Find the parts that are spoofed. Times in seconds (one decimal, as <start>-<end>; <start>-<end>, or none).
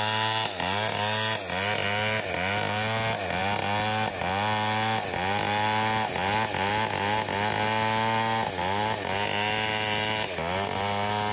none